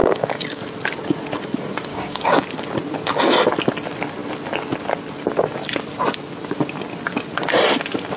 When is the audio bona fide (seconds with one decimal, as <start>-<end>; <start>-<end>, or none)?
0.6-1.9; 2.4-8.2